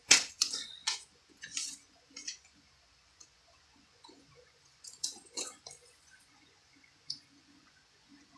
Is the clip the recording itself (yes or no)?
no